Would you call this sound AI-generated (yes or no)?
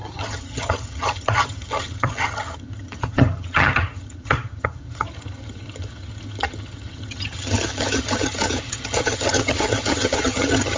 yes